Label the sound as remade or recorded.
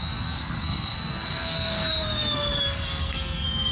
remade